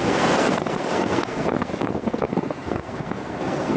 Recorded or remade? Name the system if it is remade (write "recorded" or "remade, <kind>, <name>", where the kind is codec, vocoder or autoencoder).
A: remade, codec, SNAC